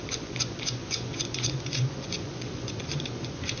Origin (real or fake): fake